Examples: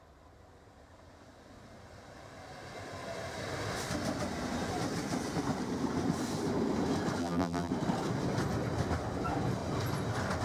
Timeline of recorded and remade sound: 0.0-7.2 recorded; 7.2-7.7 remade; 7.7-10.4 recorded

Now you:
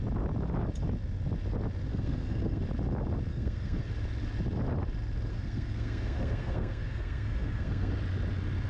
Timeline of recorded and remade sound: 0.0-1.9 recorded; 1.9-2.6 remade; 2.6-3.3 recorded; 3.3-3.9 remade; 3.9-5.3 recorded; 5.3-7.9 remade; 7.9-8.7 recorded

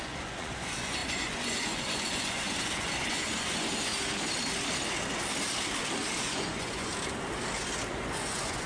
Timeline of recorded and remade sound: 0.0-3.9 remade; 3.9-6.2 recorded; 6.2-6.9 remade; 6.9-7.9 recorded; 7.9-8.7 remade

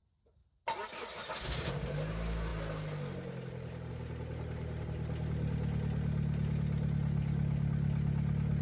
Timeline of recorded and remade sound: 0.0-8.6 recorded